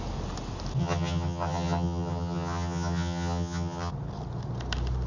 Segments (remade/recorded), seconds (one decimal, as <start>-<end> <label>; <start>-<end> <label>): 0.0-0.8 recorded; 0.8-3.9 remade; 3.9-5.1 recorded